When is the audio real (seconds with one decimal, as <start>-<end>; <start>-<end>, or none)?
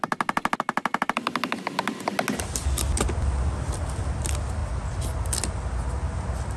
0.0-6.6